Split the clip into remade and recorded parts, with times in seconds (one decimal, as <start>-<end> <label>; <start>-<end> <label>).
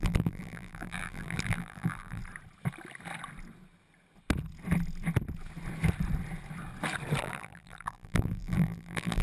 0.0-2.2 remade; 2.2-7.2 recorded; 7.2-9.2 remade